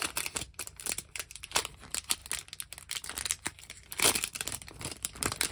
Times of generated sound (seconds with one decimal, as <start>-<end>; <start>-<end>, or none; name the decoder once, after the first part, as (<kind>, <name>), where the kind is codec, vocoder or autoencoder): 0.0-2.2 (vocoder, BigVGAN v2); 2.9-5.5

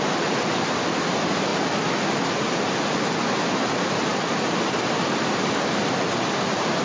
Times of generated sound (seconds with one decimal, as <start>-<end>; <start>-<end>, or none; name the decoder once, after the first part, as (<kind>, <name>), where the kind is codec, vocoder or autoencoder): 0.0-1.5 (vocoder, BigVGAN v2); 2.9-6.8